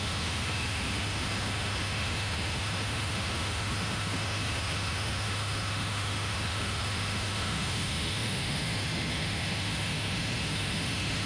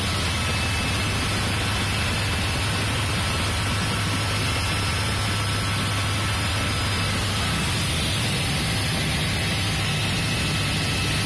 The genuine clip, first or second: second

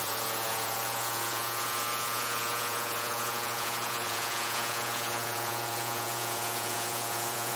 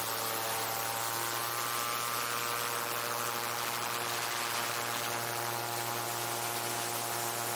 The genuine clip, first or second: second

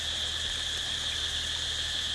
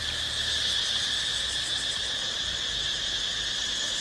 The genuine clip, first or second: second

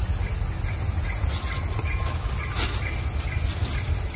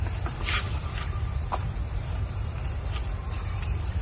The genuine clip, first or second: first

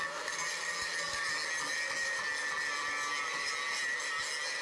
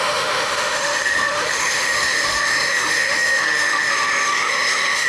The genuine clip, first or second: first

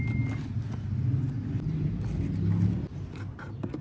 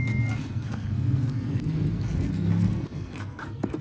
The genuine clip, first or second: first